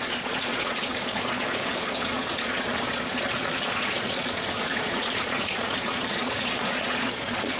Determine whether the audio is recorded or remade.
remade